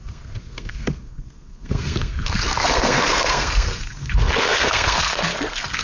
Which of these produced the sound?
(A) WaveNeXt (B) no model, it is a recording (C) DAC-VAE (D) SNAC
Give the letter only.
D